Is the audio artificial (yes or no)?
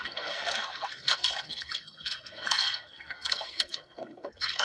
yes